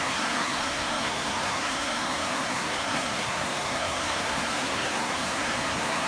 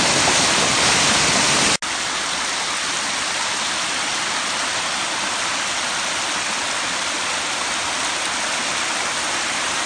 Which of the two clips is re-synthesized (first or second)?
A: first